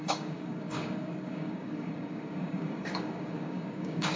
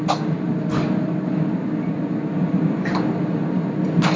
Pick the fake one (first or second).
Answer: first